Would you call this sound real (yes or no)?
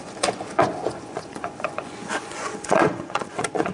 no